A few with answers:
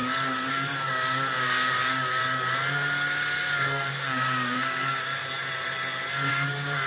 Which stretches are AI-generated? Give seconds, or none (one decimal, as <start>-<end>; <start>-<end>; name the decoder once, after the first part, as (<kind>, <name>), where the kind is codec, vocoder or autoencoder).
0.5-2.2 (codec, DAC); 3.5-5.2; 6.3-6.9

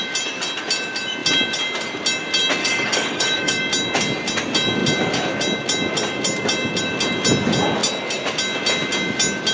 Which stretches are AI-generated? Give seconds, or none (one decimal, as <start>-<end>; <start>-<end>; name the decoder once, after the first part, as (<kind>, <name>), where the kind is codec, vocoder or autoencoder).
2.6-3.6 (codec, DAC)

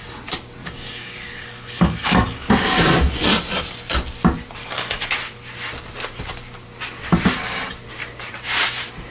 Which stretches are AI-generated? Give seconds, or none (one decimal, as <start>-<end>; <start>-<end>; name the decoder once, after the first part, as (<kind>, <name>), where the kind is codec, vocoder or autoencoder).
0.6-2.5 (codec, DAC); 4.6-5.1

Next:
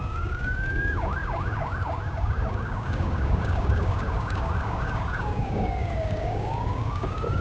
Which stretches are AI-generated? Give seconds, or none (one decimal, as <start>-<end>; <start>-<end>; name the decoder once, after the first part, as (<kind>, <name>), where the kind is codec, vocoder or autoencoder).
0.0-7.4 (codec, DAC)

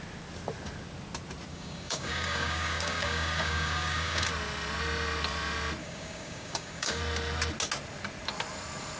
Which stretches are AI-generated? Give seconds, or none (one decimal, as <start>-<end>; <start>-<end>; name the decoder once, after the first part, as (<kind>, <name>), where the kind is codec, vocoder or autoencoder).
1.5-4.3 (codec, DAC); 5.8-7.0